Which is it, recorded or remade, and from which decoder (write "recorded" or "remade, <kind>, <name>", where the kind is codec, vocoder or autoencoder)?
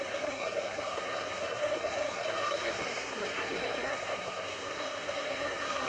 remade, codec, SNAC